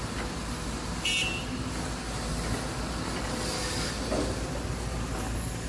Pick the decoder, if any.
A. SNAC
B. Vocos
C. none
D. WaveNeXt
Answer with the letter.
C